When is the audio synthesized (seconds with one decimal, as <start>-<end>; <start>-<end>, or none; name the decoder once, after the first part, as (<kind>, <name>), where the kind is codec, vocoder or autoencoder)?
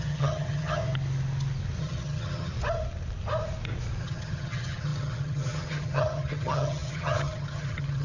0.0-0.8 (vocoder, HiFi-GAN); 1.8-2.5; 4.0-8.0